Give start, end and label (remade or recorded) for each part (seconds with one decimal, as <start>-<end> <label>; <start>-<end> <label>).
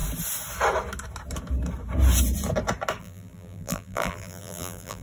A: 0.0-3.0 recorded; 3.0-5.0 remade